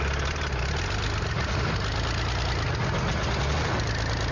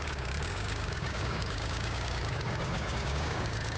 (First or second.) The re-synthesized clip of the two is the second